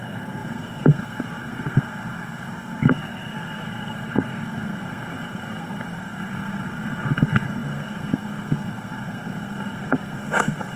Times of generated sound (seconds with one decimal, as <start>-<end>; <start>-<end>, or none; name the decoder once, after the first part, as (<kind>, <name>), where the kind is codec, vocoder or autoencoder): 0.0-10.8 (codec, SNAC)